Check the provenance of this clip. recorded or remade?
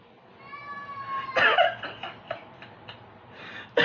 recorded